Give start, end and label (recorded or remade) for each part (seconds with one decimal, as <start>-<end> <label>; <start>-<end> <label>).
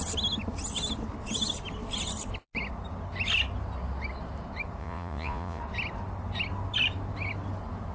0.0-4.8 recorded; 4.8-5.6 remade; 5.6-7.9 recorded